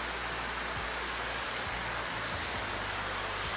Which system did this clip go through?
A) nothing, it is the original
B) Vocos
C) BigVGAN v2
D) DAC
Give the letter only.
A